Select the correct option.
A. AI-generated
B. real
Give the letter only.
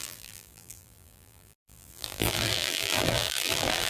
A